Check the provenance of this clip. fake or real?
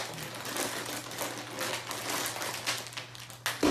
real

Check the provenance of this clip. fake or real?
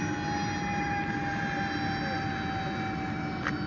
real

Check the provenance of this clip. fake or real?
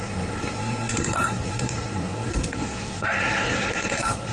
fake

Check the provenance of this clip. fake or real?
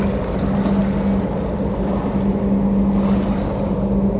real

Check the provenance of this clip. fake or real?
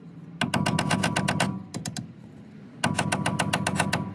real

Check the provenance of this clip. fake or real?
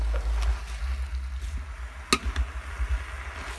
real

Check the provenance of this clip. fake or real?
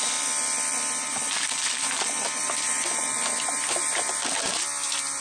real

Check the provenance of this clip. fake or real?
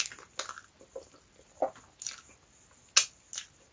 real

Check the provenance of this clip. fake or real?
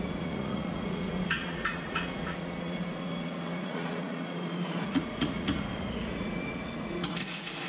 fake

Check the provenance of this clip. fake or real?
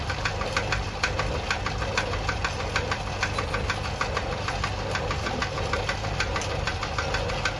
real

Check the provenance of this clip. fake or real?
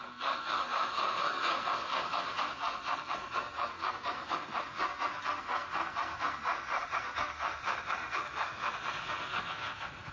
fake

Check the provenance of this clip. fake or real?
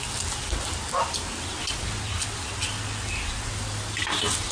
real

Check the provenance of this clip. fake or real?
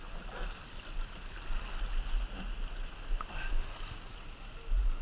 real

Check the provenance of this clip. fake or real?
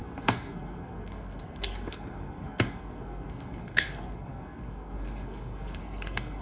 fake